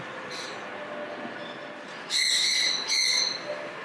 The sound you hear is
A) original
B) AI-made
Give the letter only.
A